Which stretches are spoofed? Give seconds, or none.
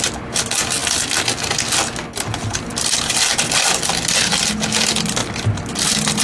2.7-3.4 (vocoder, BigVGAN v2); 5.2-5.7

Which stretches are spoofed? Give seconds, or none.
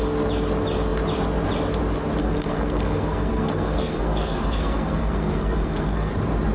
2.2-6.1 (codec, SNAC)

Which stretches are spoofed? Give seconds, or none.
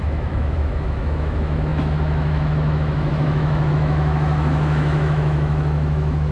0.0-6.3 (autoencoder, DAC-VAE)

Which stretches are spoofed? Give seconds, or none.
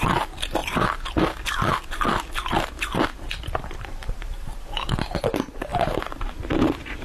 0.0-0.6 (vocoder, BigVGAN v2); 3.6-7.0